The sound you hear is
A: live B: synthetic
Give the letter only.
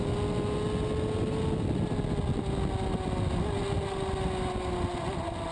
A